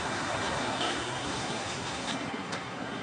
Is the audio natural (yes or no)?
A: no